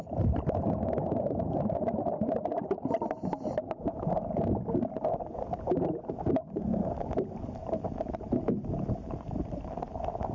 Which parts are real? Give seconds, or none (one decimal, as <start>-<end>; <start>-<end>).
0.0-10.3